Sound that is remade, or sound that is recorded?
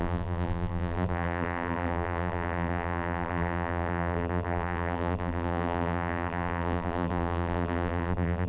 remade